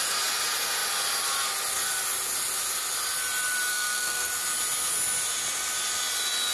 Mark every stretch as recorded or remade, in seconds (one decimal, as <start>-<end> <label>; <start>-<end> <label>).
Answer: 0.0-3.7 recorded; 3.7-4.3 remade; 4.3-6.5 recorded